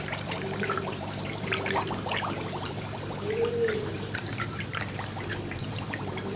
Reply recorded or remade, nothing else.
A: remade